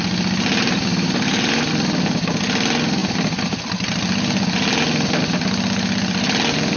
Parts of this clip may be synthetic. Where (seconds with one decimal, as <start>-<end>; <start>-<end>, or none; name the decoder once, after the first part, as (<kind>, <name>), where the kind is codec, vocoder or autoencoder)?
0.9-1.7 (vocoder, BigVGAN v2)